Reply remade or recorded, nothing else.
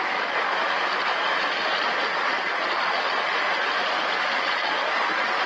recorded